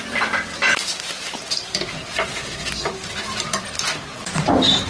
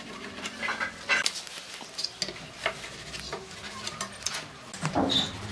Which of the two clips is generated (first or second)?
first